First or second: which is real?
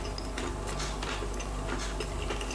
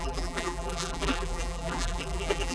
first